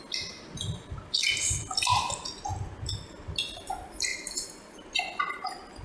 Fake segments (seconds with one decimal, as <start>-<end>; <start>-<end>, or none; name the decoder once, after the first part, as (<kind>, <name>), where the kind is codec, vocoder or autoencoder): none

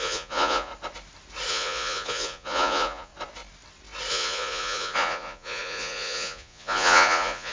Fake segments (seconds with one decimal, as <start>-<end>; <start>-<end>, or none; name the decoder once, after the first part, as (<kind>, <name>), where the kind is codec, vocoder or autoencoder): 0.0-0.7 (vocoder, Vocos); 1.5-3.1; 4.1-7.5